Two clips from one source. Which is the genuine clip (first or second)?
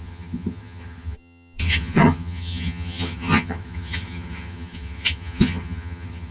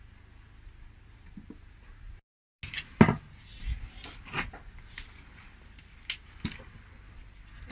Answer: second